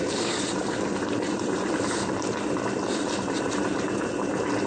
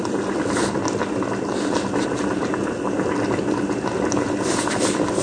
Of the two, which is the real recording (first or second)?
second